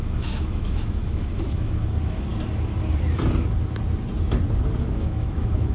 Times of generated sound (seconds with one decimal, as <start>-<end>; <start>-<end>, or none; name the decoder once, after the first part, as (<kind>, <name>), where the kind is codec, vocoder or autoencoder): 0.0-2.3 (autoencoder, DAC-VAE); 4.9-5.7